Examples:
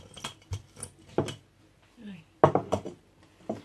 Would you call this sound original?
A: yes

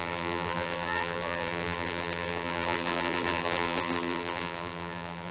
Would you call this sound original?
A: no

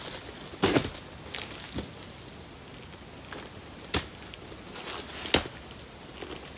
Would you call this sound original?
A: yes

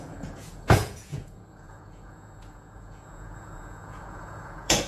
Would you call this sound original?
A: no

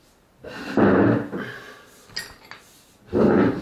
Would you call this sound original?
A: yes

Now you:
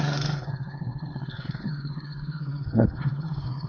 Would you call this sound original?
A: no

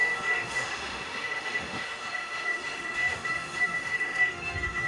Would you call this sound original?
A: no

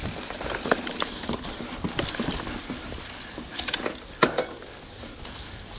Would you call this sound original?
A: yes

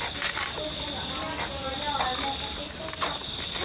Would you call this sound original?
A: yes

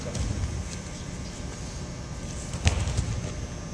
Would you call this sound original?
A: no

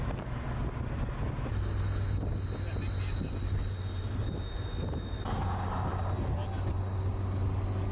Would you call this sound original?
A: yes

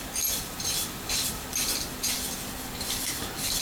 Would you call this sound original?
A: yes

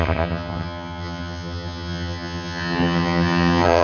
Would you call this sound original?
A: no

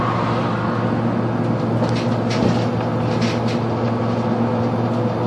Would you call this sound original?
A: yes